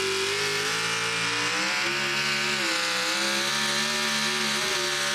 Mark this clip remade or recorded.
recorded